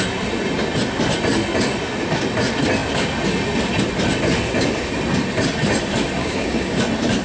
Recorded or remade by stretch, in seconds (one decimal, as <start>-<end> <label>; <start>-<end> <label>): 0.0-6.2 recorded; 6.2-6.8 remade; 6.8-7.2 recorded